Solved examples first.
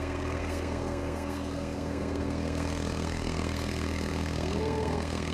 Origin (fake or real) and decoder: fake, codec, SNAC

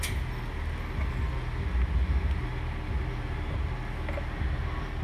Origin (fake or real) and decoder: real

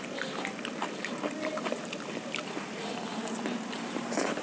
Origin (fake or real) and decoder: real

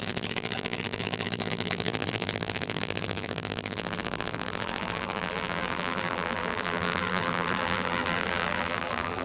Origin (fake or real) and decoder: fake, vocoder, BigVGAN v2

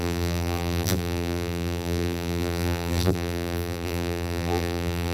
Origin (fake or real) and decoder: fake, vocoder, BigVGAN v2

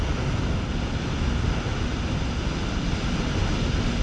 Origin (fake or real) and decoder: real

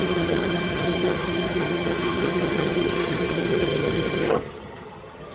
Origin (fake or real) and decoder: fake, vocoder, HiFi-GAN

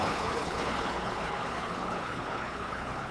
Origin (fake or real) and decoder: fake, codec, HILCodec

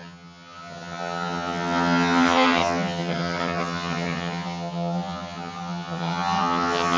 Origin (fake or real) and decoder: fake, vocoder, HiFi-GAN